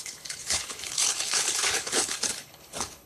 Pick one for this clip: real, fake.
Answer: fake